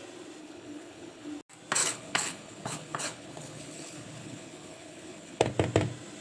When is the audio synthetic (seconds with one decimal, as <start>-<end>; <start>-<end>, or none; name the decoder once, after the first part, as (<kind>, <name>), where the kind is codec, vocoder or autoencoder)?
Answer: 0.4-1.3 (codec, HILCodec); 1.8-5.5